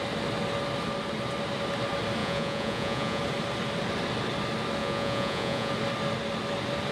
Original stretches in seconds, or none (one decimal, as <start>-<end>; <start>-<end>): 0.0-2.2; 3.2-4.8; 5.7-6.9